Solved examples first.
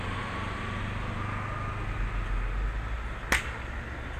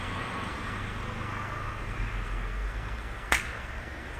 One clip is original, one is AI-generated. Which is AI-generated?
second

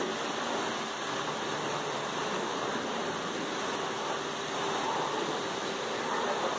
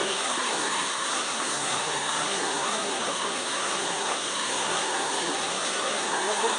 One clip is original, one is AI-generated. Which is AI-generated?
second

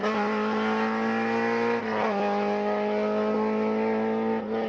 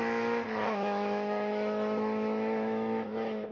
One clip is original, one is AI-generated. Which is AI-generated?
second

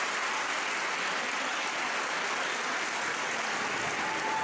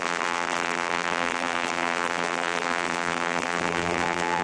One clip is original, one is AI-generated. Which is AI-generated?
second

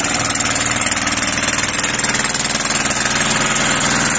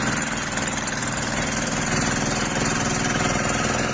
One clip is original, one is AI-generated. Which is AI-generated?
second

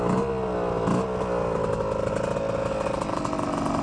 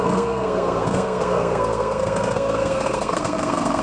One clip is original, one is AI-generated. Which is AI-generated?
second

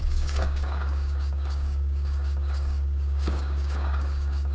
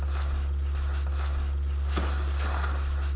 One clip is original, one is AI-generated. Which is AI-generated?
first